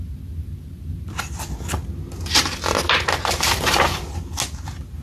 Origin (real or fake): real